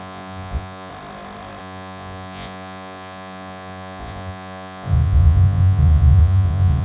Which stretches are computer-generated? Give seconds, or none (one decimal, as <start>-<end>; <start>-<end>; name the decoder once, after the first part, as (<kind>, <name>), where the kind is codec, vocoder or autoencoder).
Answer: 0.0-0.9 (vocoder, Vocos); 1.6-6.8